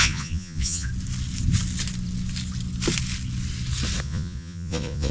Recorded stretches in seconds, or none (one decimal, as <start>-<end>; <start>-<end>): 0.9-4.0

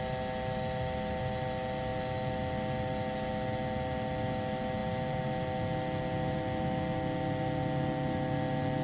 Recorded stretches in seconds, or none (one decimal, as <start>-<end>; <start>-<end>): 0.0-8.8

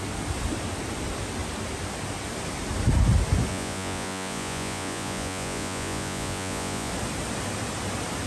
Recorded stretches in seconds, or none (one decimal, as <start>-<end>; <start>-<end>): 0.0-3.5; 6.9-8.3

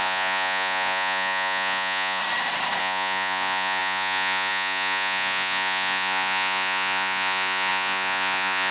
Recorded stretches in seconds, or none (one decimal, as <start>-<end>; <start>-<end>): 2.2-2.8